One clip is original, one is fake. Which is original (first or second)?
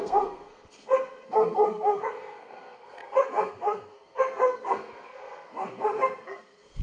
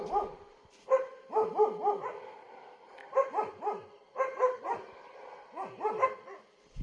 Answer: second